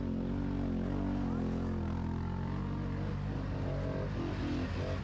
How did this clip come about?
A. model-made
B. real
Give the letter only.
B